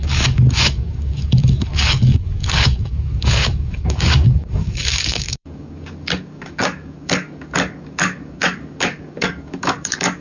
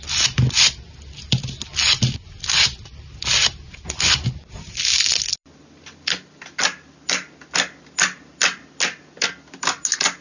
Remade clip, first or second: first